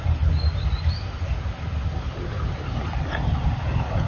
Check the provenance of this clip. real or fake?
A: real